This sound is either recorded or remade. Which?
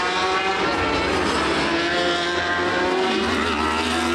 recorded